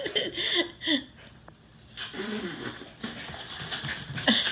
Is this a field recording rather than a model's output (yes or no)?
yes